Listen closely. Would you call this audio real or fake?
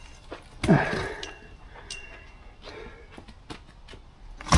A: real